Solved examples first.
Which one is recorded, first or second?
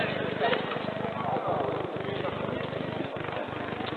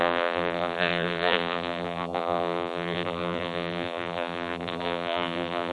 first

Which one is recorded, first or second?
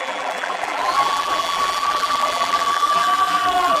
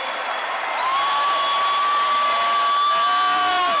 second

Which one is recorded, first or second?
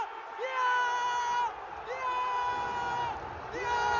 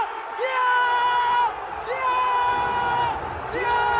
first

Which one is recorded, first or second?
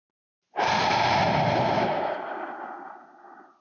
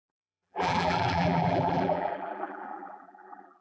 first